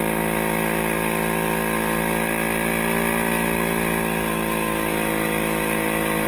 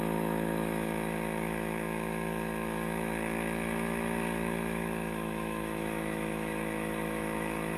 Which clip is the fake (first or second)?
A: second